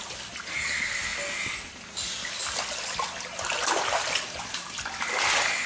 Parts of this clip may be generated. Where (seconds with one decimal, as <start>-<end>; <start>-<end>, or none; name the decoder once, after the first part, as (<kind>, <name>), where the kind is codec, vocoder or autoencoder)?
none